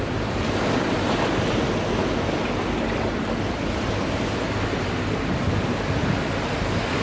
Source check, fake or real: real